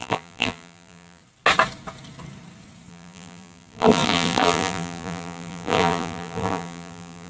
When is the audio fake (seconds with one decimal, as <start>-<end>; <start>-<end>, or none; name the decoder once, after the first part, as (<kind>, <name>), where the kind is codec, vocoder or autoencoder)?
0.0-1.2 (vocoder, BigVGAN v2); 2.9-7.3